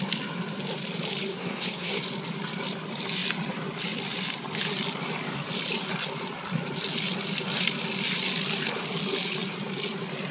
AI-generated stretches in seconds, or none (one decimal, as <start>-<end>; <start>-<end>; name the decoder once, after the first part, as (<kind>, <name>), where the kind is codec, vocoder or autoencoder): 1.3-2.0 (codec, SNAC)